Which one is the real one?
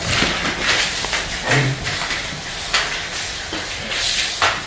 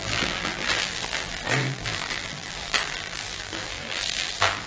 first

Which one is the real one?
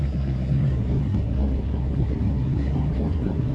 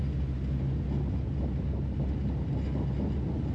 second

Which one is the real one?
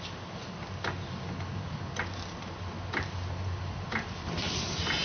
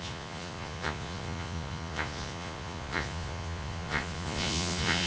first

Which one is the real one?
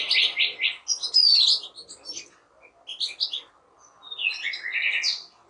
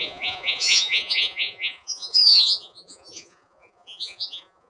first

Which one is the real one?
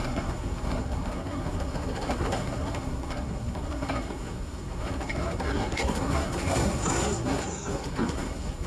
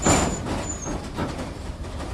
second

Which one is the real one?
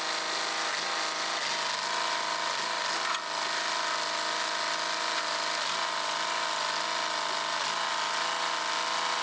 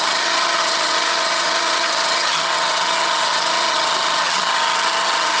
first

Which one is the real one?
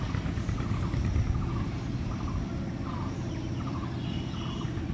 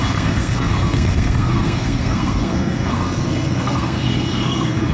first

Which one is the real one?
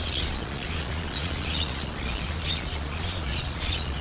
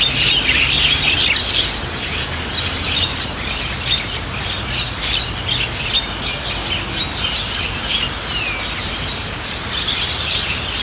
second